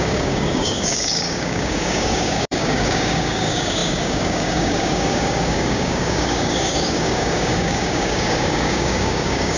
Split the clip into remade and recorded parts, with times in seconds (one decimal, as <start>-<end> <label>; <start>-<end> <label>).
0.0-9.6 remade

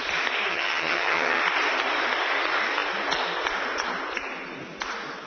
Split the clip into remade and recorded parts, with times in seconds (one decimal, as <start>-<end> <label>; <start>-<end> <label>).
0.0-0.5 recorded; 0.5-1.4 remade; 1.4-5.3 recorded

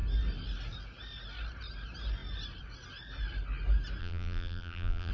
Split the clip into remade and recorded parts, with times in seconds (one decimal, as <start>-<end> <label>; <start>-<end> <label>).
0.0-4.0 recorded; 4.0-5.1 remade